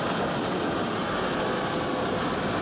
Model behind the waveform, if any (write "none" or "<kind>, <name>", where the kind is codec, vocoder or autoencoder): none